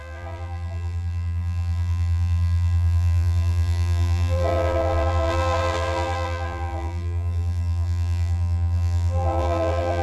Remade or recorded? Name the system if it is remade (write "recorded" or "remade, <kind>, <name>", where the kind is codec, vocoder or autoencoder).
remade, vocoder, BigVGAN v2